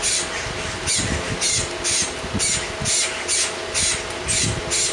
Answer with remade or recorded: recorded